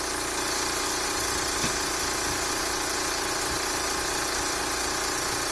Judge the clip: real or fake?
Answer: real